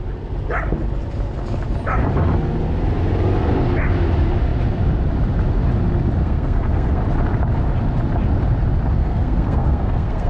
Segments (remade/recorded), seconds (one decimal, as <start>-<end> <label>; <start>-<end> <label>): 0.0-6.2 recorded; 6.2-7.0 remade; 7.0-9.0 recorded; 9.0-10.3 remade